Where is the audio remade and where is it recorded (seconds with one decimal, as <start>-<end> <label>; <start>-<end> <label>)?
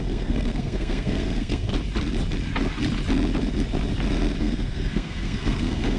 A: 0.0-1.7 remade; 1.7-4.4 recorded; 4.4-6.0 remade